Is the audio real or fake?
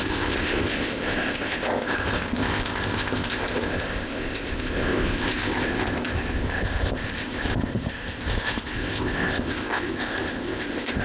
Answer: fake